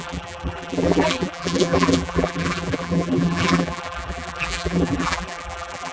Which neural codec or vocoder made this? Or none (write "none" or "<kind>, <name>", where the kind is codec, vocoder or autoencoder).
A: vocoder, BigVGAN v2